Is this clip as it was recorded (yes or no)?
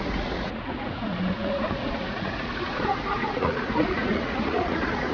no